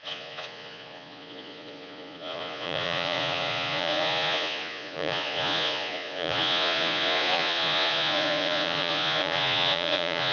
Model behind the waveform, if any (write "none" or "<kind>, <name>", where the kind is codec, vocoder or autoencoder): vocoder, Vocos